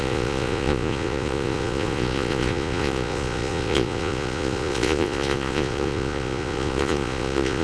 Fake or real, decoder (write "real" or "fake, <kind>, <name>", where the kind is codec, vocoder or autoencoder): fake, vocoder, Vocos